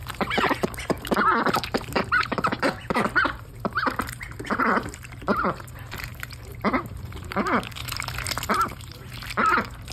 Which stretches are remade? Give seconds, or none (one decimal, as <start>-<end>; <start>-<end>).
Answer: 0.0-7.8; 8.5-9.9